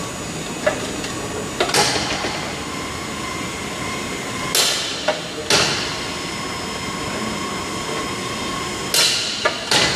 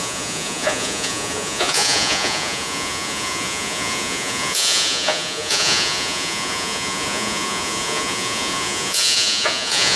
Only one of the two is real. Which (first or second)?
first